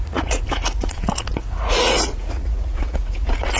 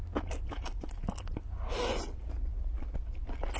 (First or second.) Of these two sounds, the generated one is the first